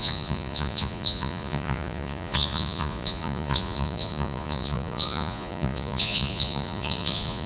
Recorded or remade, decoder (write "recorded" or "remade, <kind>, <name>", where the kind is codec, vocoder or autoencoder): remade, vocoder, Vocos